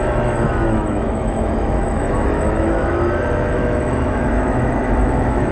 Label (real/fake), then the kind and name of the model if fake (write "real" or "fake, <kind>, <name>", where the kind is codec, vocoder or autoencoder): fake, autoencoder, DAC-VAE